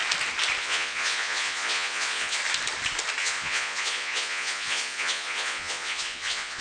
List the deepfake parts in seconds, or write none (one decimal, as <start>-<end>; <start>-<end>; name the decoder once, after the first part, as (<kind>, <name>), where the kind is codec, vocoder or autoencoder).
0.6-2.4 (vocoder, Vocos); 3.2-6.6